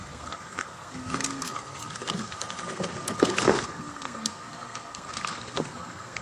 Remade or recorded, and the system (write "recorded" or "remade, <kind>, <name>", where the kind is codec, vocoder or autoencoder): remade, codec, SNAC